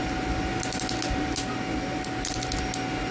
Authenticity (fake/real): real